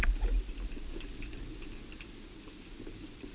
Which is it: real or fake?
real